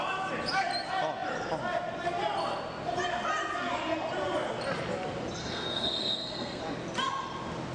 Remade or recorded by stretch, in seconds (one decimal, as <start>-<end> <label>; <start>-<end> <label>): 0.0-5.4 recorded; 5.4-6.6 remade; 6.6-7.7 recorded